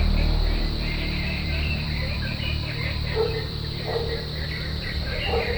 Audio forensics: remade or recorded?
remade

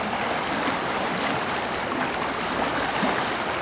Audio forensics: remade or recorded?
recorded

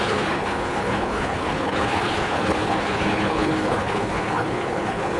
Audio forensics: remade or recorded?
remade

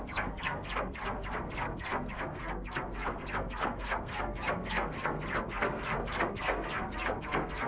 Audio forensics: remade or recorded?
remade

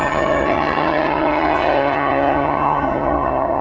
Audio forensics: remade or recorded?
remade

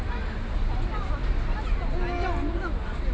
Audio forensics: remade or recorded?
recorded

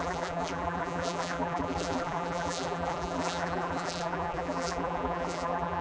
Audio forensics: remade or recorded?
remade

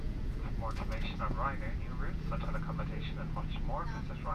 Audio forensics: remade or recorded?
remade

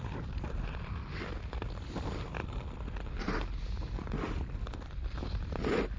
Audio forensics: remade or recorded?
recorded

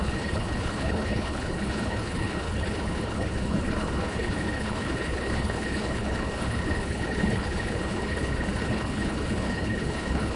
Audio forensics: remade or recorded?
remade